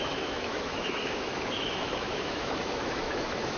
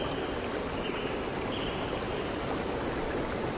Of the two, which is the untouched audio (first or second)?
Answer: second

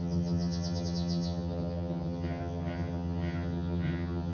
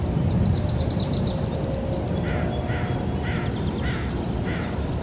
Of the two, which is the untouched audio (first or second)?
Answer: second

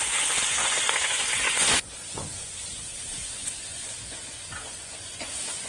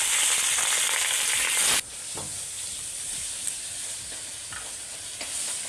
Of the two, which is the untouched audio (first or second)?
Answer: second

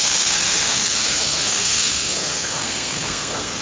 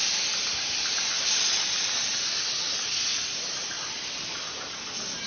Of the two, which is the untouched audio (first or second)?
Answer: second